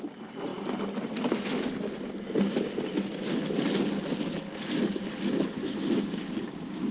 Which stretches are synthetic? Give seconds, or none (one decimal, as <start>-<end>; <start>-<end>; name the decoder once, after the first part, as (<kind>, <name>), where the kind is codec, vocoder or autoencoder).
5.6-6.9 (codec, DAC)